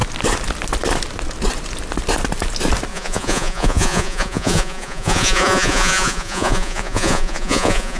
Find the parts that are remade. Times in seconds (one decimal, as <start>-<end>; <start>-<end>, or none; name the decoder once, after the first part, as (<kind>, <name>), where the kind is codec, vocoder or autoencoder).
2.9-8.0 (vocoder, Vocos)